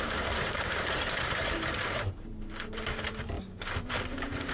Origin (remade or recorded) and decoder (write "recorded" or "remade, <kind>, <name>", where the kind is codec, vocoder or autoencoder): remade, vocoder, BigVGAN v2